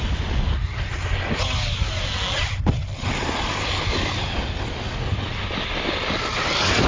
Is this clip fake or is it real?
real